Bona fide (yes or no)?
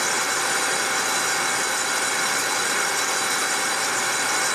yes